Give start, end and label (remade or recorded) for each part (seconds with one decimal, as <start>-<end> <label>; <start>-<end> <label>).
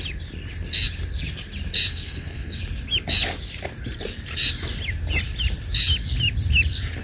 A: 0.0-1.9 recorded; 1.9-2.6 remade; 2.6-7.0 recorded